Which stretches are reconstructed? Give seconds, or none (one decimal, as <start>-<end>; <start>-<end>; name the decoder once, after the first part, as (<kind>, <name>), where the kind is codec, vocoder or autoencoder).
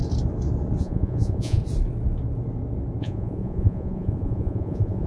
0.8-1.6 (vocoder, Vocos); 3.0-5.1